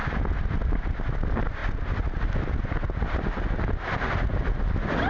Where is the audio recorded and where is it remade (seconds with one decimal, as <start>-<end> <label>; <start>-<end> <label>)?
0.0-1.0 remade; 1.0-1.6 recorded; 1.6-5.1 remade